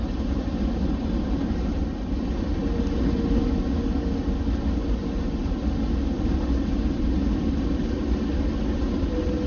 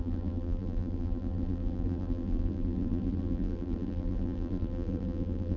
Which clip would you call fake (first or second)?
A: second